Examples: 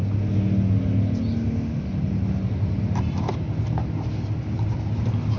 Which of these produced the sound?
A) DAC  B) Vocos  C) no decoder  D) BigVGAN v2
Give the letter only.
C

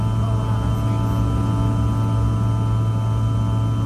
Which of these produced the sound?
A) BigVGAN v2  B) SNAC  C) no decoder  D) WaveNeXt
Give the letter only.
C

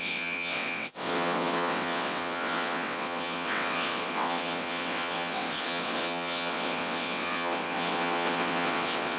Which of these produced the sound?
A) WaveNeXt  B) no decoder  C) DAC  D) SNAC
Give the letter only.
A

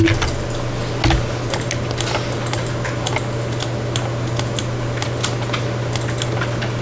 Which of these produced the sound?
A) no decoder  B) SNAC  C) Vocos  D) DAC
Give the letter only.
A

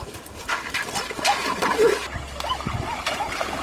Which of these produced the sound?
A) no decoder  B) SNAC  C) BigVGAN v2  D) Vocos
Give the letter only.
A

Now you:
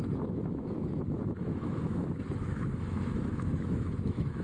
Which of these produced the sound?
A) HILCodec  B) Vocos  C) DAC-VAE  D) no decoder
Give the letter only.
C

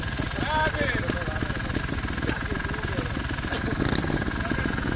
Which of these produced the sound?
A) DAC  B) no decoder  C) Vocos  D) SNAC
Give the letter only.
B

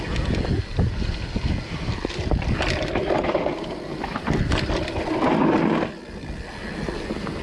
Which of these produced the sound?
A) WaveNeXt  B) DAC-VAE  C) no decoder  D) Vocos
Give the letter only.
C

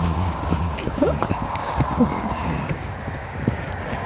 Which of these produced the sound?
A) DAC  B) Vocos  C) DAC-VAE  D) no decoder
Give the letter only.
A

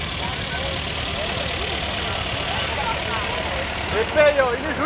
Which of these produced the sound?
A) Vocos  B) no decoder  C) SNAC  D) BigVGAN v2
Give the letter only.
B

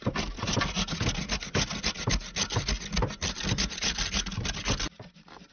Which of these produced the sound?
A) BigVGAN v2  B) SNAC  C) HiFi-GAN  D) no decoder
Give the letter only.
D